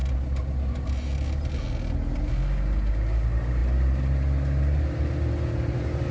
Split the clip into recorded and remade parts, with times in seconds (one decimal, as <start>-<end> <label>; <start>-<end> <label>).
0.0-6.1 recorded